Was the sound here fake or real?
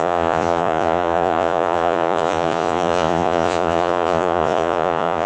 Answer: fake